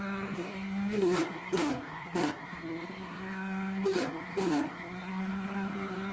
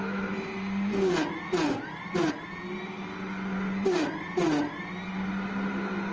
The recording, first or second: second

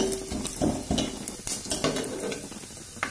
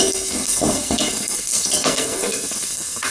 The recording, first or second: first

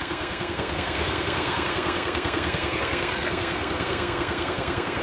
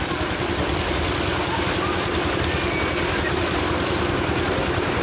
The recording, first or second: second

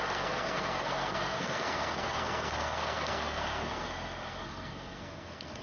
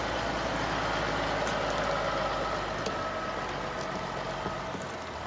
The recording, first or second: second